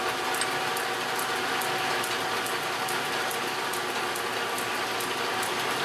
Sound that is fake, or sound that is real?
real